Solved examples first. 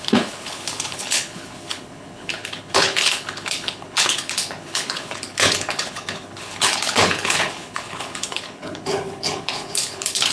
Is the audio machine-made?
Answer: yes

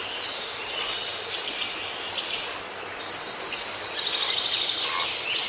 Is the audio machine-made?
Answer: no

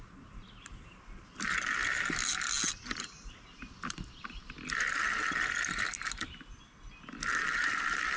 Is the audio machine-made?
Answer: no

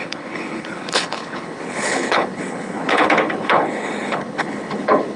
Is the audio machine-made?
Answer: yes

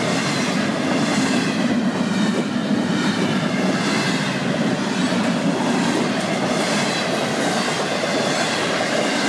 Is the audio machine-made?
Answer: no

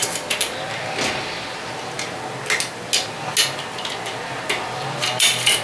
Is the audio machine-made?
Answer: no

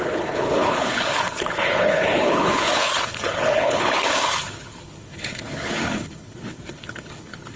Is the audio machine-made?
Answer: yes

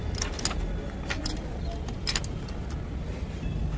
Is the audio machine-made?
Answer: no